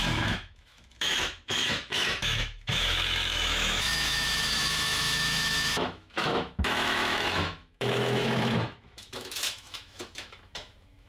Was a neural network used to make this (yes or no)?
yes